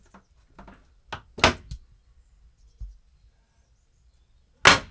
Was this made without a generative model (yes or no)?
yes